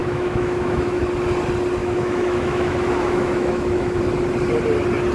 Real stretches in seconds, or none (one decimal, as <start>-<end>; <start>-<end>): 1.0-1.8; 4.0-5.1